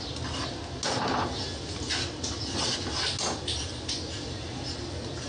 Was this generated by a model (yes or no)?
no